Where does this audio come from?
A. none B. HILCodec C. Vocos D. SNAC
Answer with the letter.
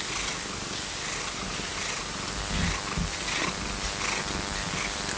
A